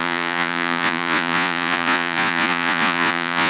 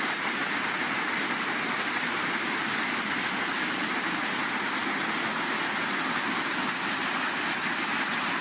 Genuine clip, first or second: second